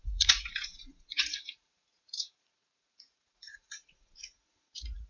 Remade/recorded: remade